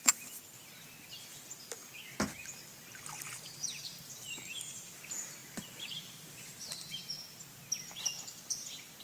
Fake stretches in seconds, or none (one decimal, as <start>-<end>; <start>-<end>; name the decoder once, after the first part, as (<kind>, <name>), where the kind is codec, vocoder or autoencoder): 0.0-0.5 (vocoder, BigVGAN v2); 5.4-6.1

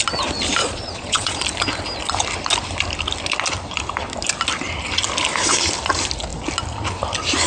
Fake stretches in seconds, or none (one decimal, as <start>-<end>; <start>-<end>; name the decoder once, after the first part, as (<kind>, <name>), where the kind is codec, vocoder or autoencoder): 0.6-1.4 (vocoder, Vocos)

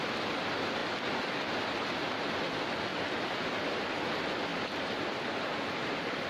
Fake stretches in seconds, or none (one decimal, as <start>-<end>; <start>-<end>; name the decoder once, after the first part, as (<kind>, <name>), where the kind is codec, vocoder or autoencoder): 2.9-3.6 (vocoder, BigVGAN v2); 4.5-5.0; 5.5-6.3

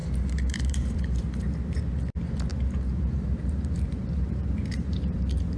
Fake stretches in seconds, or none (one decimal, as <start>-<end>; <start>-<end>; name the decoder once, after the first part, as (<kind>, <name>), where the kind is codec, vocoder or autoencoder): 0.0-1.8 (vocoder, BigVGAN v2); 2.5-5.1

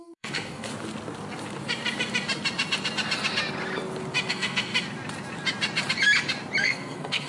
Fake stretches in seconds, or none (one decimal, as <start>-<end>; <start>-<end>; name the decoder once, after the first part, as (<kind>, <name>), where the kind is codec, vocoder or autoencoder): 0.0-0.7 (codec, SNAC); 4.3-4.7; 6.6-7.3